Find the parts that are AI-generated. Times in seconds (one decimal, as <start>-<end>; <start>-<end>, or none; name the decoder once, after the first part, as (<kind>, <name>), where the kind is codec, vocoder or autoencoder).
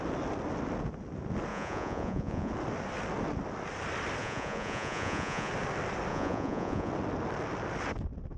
1.5-2.5 (vocoder, Vocos); 4.2-5.5; 6.1-6.9